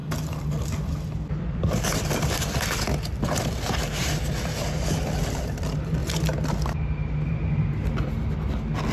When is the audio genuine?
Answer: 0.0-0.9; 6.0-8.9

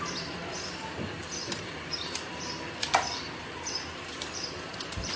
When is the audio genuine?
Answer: 0.4-1.2

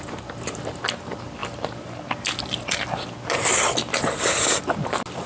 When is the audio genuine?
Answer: 0.0-1.4; 4.6-5.3

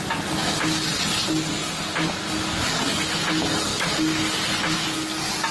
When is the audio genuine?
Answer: 0.0-5.5